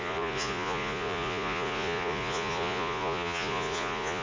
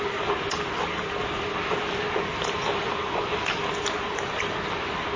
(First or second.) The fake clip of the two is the first